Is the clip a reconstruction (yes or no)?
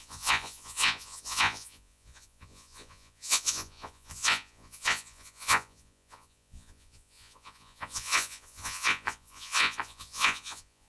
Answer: yes